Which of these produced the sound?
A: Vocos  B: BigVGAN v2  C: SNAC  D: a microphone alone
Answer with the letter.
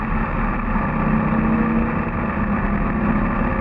D